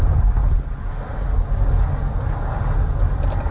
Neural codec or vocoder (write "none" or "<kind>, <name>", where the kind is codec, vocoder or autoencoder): none